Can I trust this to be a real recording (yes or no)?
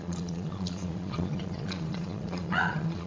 no